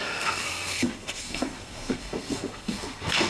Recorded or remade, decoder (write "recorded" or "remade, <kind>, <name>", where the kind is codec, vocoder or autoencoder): remade, codec, SNAC